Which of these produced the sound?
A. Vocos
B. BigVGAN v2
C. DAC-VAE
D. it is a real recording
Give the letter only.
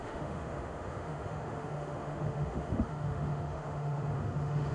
C